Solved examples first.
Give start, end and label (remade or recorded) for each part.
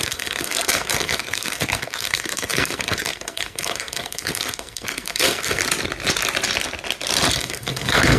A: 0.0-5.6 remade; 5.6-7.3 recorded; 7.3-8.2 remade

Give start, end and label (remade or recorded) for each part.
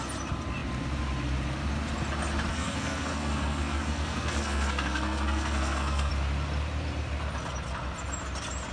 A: 0.0-2.5 recorded; 2.5-6.1 remade; 6.1-8.7 recorded